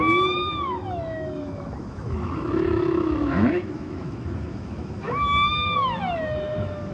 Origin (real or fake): fake